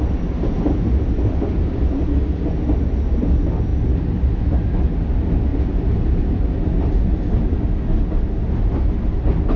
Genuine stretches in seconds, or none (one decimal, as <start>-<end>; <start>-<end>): 0.0-3.7; 4.4-5.5; 7.5-9.6